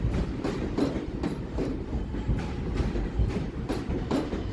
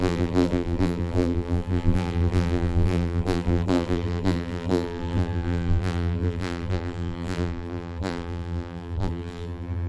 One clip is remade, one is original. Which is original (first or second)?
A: first